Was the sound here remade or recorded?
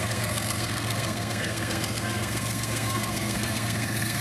remade